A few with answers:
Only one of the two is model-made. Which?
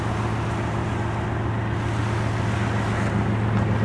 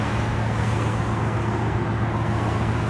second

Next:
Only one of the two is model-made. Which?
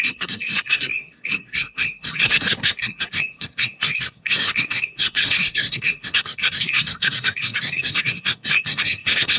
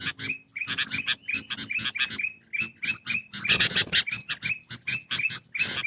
first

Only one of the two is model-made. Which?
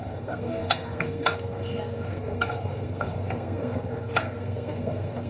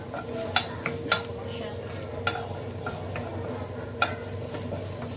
first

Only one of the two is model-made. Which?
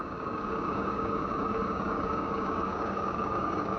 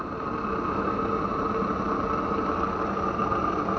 first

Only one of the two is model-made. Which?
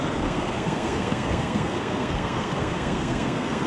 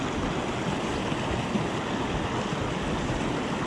first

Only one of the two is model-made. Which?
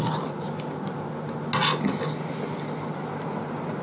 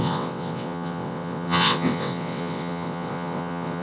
second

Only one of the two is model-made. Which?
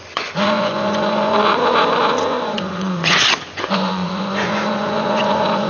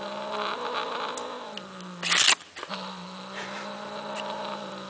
first